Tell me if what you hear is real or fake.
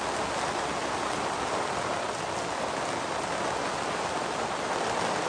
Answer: real